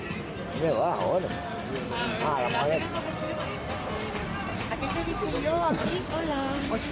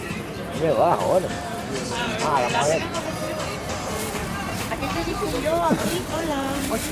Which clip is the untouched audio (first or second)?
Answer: first